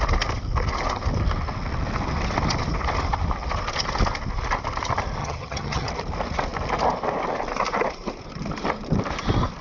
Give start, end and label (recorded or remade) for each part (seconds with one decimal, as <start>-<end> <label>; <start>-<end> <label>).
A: 0.0-5.2 recorded; 5.2-5.9 remade; 5.9-9.6 recorded